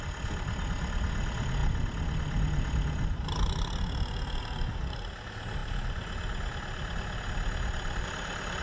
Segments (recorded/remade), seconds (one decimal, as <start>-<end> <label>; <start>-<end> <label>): 0.0-8.6 recorded